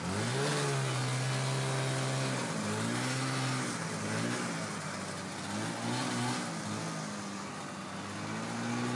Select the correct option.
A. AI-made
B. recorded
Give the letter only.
B